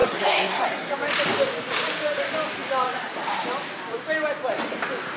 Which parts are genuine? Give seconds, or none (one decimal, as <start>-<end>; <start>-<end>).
0.9-5.2